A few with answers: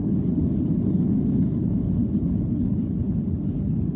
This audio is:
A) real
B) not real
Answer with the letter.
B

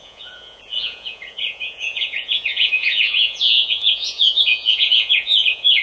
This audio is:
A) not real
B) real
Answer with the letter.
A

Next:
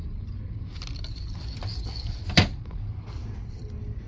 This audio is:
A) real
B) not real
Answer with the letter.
A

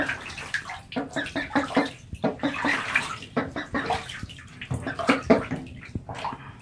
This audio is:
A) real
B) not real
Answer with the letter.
B